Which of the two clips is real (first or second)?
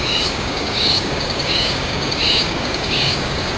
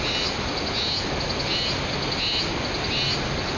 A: second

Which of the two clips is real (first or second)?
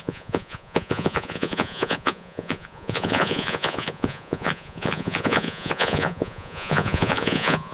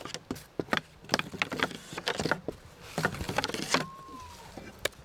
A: second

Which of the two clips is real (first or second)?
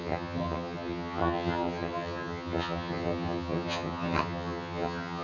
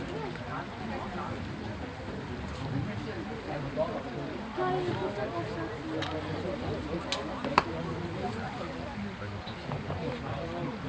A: second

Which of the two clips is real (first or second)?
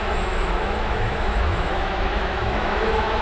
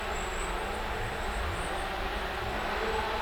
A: second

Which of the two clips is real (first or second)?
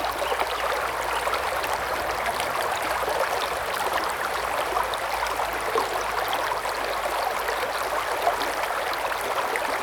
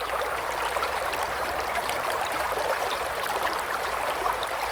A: first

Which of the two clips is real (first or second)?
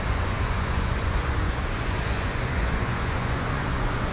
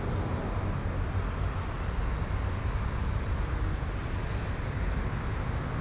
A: second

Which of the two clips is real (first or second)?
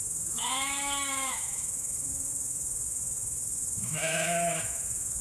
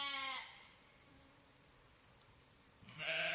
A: second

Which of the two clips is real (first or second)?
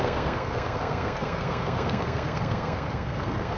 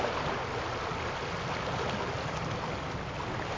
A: second